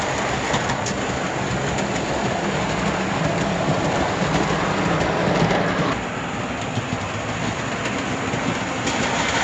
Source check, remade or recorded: recorded